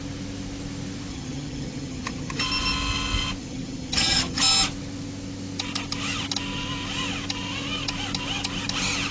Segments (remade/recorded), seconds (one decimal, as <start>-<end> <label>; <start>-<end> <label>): 0.0-1.1 recorded; 1.1-2.4 remade; 2.4-3.4 recorded; 3.4-4.4 remade; 4.4-9.1 recorded